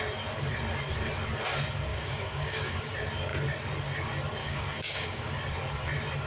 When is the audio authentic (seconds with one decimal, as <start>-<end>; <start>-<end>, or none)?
0.0-1.9; 2.9-4.4; 5.3-6.3